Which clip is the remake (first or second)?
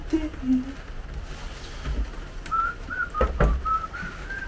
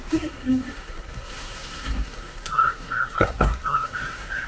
second